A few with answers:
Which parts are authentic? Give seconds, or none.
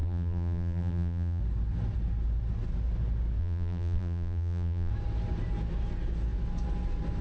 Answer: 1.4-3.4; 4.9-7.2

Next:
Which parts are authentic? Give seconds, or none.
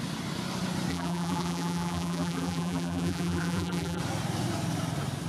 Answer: 0.0-0.9; 4.0-5.3